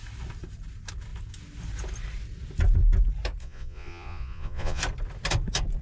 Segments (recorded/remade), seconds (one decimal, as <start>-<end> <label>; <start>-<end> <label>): 0.0-3.4 recorded; 3.4-4.8 remade; 4.8-5.8 recorded